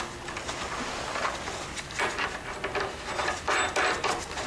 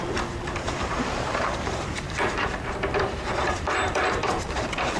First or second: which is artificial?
second